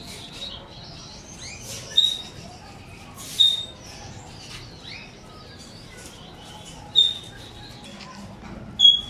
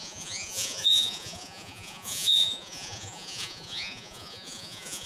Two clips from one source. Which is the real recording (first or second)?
first